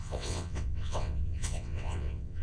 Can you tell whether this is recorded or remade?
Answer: remade